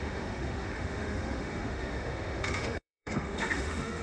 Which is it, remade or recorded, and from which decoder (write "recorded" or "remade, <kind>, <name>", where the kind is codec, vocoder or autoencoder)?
remade, autoencoder, DAC-VAE